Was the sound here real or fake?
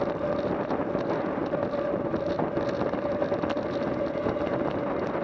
real